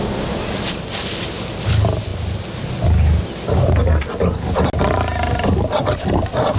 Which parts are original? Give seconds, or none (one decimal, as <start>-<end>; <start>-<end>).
0.0-1.0; 1.6-6.6